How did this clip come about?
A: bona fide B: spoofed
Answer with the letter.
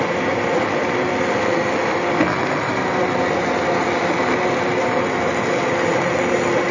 A